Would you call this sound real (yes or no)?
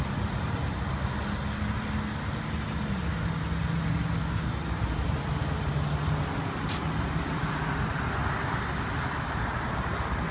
yes